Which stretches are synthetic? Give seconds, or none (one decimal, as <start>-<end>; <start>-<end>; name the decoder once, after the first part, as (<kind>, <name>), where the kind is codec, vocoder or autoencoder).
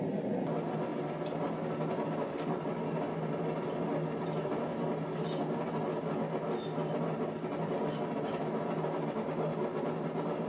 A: none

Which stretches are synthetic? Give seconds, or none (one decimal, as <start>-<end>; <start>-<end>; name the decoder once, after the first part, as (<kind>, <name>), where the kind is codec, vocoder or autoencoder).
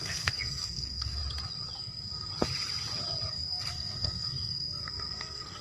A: 0.0-1.2 (codec, SNAC); 1.8-2.3; 3.3-5.6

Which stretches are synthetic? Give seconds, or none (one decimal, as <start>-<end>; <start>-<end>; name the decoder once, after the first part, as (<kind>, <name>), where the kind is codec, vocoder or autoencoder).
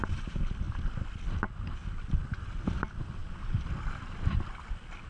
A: none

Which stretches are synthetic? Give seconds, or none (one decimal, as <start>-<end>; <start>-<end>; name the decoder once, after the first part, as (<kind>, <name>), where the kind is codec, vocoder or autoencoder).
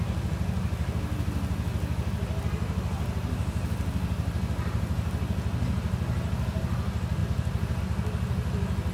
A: none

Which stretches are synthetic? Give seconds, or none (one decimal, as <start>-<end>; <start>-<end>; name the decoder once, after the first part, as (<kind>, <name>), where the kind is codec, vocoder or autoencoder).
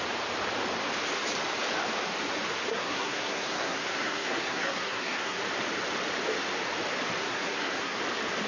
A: 2.7-5.4 (codec, SNAC); 7.2-8.0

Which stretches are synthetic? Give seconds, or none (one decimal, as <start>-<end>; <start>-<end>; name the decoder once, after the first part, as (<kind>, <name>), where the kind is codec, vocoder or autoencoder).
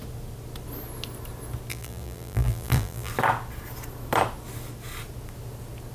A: 1.7-3.1 (vocoder, BigVGAN v2)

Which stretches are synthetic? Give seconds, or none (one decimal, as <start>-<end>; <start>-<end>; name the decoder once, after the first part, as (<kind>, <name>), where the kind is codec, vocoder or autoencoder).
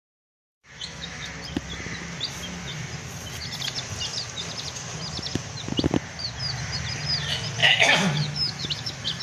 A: 0.0-1.3 (autoencoder, DAC-VAE); 7.6-9.2